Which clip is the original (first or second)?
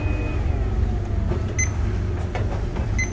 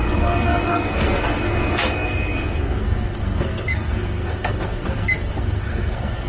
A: first